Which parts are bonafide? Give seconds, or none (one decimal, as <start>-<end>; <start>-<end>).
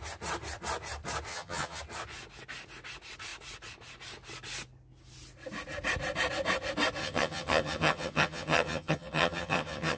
0.0-1.3; 1.8-7.0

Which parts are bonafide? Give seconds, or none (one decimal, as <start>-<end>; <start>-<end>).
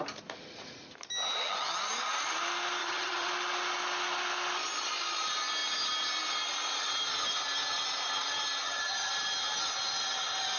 0.0-2.8; 3.3-8.6; 9.1-10.6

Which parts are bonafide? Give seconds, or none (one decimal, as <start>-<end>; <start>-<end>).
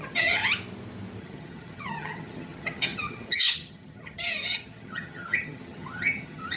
0.4-1.2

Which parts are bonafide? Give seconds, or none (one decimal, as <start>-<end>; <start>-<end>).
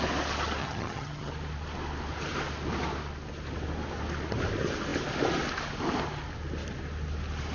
0.0-0.6; 1.3-7.5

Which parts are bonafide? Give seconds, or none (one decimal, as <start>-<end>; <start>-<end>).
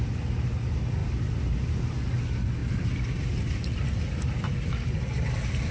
0.0-5.7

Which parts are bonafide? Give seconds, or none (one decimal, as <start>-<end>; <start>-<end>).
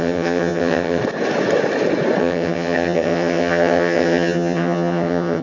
1.0-2.2